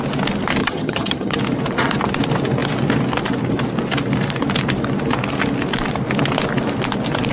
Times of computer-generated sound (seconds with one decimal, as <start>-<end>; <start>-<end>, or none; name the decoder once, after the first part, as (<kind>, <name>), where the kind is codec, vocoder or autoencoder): 0.6-1.4 (vocoder, HiFi-GAN)